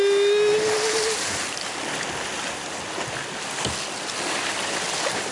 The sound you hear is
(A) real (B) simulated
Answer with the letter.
A